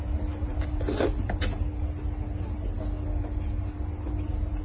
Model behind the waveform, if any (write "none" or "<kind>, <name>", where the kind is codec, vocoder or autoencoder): none